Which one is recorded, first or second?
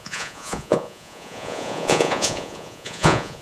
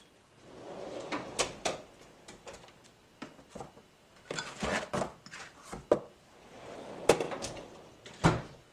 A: second